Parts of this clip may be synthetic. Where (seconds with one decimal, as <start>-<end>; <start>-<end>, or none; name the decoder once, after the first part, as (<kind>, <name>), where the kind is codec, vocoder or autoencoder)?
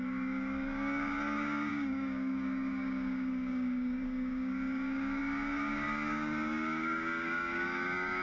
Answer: 0.0-8.2 (codec, DAC)